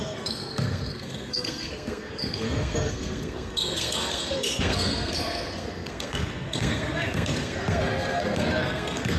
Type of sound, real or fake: fake